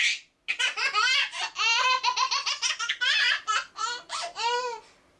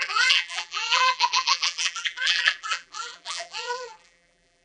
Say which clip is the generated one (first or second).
second